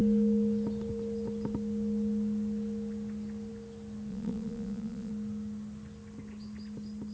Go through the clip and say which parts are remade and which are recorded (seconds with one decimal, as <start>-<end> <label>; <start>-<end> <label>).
0.0-4.1 recorded; 4.1-5.1 remade; 5.1-7.1 recorded